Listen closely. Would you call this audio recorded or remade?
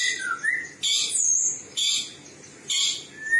recorded